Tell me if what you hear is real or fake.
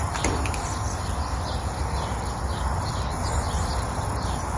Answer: real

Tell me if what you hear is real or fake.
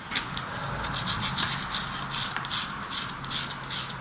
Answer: real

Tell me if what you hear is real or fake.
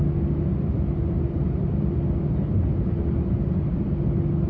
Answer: real